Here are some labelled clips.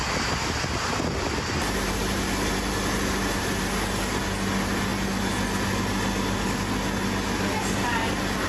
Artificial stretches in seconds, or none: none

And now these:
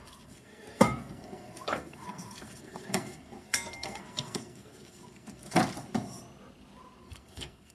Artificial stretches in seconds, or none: 0.0-5.6 (codec, SNAC); 7.0-7.7

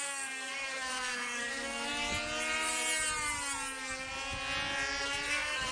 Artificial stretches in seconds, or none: 0.0-1.9 (codec, SNAC); 5.3-5.7

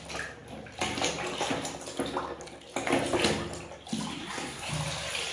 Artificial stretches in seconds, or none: 4.1-4.7 (codec, SNAC)